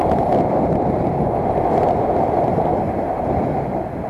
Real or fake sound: real